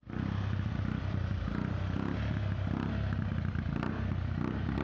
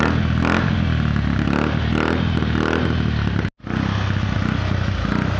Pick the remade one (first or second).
first